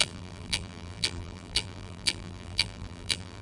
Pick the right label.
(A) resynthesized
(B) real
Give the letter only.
A